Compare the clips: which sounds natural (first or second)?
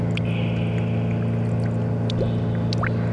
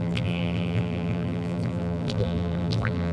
first